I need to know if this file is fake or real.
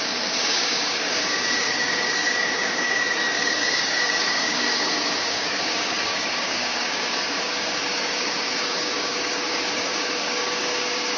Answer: fake